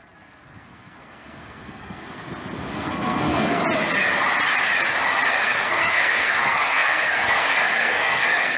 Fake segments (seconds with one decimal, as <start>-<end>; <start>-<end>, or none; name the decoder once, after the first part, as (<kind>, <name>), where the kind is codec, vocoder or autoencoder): 0.0-2.2 (codec, SNAC); 2.7-3.6; 5.3-8.6